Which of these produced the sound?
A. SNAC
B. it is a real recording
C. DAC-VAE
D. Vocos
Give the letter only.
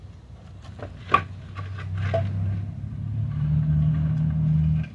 B